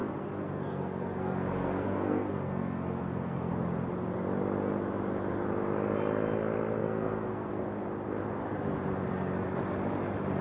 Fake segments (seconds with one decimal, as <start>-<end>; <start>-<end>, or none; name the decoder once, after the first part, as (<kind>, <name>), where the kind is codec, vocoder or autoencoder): 0.0-3.5 (codec, SNAC); 6.8-7.6